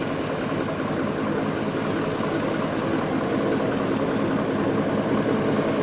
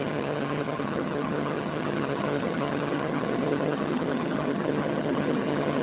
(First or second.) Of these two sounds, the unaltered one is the first